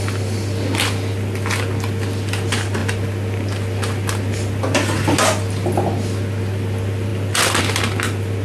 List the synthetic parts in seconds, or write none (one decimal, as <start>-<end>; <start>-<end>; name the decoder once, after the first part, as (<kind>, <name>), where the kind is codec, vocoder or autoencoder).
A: none